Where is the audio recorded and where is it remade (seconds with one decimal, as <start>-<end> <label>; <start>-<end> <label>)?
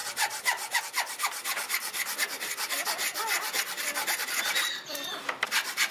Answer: 0.0-5.9 recorded